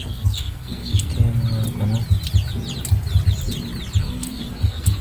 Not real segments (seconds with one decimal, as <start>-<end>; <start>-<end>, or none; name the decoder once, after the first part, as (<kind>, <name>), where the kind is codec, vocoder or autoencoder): 0.0-1.1 (codec, SNAC); 4.0-5.0